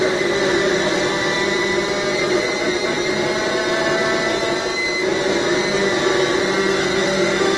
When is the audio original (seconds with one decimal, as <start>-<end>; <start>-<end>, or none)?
0.0-6.8